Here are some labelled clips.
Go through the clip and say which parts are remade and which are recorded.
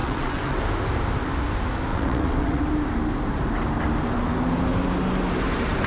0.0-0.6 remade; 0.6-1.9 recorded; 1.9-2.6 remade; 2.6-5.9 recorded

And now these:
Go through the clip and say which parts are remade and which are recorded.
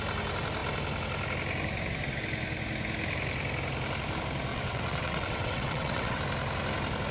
0.0-4.5 recorded; 4.5-6.2 remade; 6.2-7.1 recorded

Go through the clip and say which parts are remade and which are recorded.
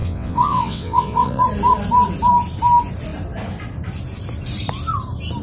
0.0-1.4 remade; 1.4-5.4 recorded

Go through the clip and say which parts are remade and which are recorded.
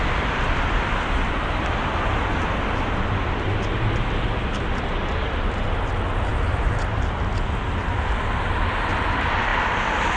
0.0-10.2 recorded